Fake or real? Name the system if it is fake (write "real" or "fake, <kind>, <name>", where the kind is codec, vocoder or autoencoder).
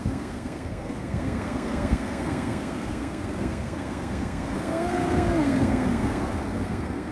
fake, codec, SNAC